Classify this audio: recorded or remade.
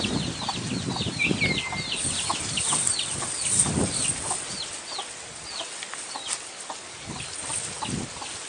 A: recorded